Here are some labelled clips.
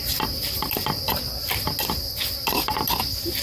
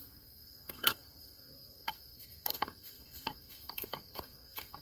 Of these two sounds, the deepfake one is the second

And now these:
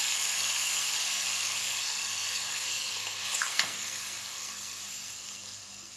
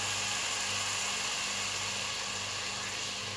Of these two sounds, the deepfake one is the first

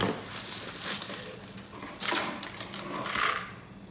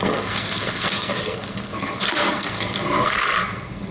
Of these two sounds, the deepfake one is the second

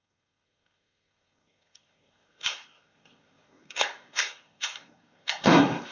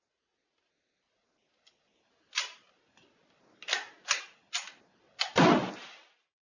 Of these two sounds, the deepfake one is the first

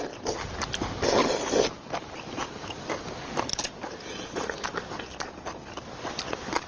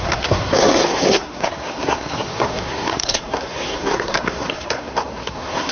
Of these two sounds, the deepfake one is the second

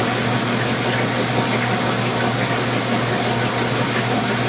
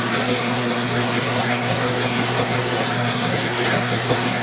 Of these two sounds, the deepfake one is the second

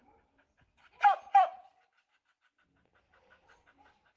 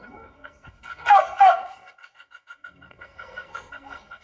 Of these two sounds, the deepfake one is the second